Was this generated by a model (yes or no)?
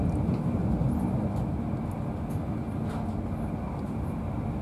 no